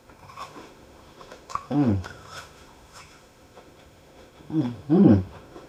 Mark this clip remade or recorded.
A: remade